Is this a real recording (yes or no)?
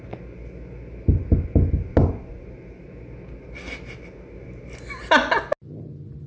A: yes